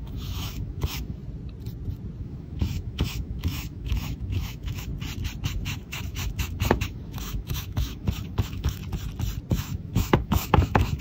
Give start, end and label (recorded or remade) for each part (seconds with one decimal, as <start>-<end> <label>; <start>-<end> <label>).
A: 0.0-1.2 remade; 1.2-2.2 recorded; 2.2-4.9 remade; 4.9-5.5 recorded; 5.5-8.8 remade; 8.8-9.5 recorded; 9.5-11.0 remade